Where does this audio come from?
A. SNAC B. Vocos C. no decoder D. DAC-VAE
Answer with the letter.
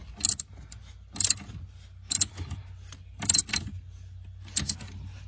C